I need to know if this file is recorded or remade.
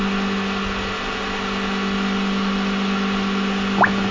recorded